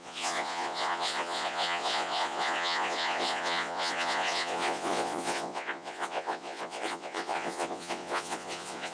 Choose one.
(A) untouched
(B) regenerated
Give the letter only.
B